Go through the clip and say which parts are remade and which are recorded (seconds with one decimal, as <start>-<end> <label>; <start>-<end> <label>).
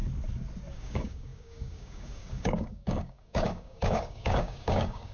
0.0-0.7 recorded; 0.7-5.1 remade